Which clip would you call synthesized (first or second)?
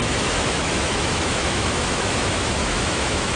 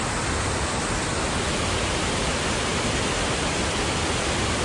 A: first